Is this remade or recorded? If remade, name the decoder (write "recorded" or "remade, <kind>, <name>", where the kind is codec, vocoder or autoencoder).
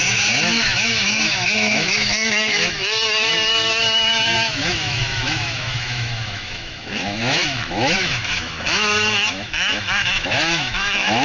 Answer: remade, autoencoder, DAC-VAE